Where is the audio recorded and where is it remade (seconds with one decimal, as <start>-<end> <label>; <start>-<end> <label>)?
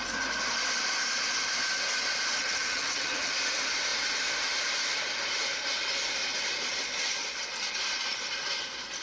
0.0-2.4 recorded; 2.4-3.3 remade; 3.3-9.0 recorded